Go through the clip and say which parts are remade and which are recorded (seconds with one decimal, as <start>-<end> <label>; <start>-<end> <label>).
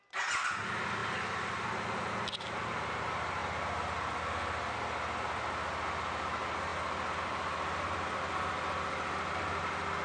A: 0.0-10.0 recorded